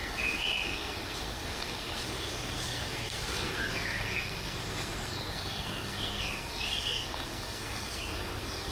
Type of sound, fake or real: fake